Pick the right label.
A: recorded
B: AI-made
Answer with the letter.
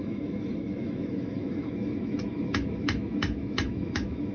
B